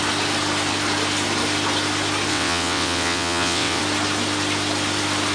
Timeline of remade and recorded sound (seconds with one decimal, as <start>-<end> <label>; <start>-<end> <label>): 0.0-2.3 recorded; 2.3-3.8 remade; 3.8-5.3 recorded